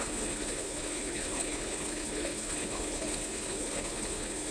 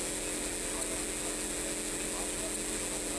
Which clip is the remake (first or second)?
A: first